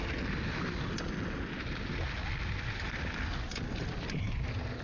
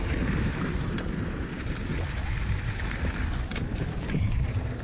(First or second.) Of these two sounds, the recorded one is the first